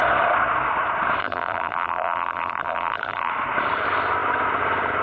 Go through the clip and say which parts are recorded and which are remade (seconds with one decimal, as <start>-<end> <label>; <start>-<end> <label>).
0.0-1.2 recorded; 1.2-3.3 remade; 3.3-5.0 recorded